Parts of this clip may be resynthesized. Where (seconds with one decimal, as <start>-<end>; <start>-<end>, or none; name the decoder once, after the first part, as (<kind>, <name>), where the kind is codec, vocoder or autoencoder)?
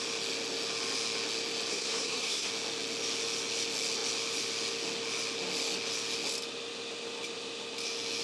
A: 1.7-2.5 (codec, SNAC)